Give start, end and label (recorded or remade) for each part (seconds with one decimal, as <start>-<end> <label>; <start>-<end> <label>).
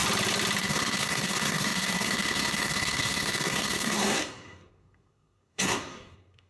0.0-0.6 recorded; 0.6-6.5 remade